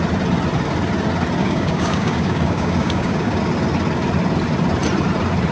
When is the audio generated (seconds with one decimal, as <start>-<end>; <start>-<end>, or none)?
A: 1.4-3.4